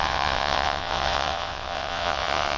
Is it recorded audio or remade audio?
remade